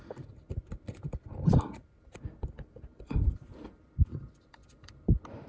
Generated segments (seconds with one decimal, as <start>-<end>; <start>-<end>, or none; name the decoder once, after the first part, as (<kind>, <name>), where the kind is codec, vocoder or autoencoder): 1.8-4.9 (vocoder, BigVGAN v2)